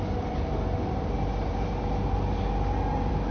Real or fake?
real